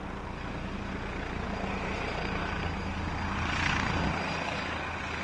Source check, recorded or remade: recorded